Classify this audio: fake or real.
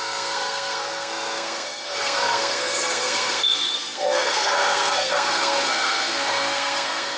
fake